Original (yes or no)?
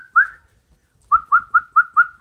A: yes